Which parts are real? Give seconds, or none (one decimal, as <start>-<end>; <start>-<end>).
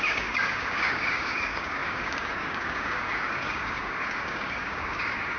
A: none